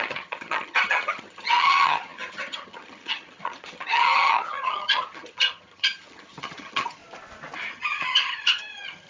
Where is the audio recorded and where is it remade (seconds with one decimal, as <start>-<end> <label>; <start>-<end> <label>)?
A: 0.0-7.0 remade; 7.0-7.7 recorded; 7.7-9.1 remade